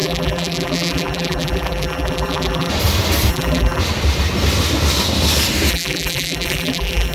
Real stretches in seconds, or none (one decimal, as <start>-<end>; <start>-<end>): 2.7-3.3; 3.8-5.7